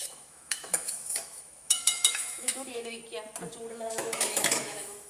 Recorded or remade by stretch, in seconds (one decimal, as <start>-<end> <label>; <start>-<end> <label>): 0.0-3.0 remade; 3.0-3.7 recorded; 3.7-5.1 remade